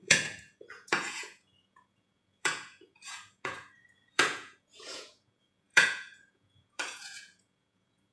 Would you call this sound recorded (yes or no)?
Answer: no